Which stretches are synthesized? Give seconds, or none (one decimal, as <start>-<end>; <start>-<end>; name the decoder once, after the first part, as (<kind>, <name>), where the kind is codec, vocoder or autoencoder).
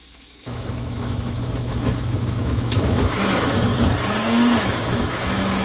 0.0-3.7 (autoencoder, DAC-VAE); 4.6-5.6